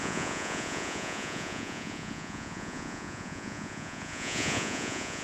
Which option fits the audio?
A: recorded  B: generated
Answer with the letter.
B